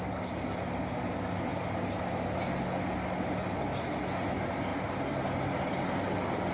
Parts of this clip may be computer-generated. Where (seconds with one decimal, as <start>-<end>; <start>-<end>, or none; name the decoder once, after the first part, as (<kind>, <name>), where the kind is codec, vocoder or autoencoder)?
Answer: none